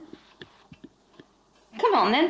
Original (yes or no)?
yes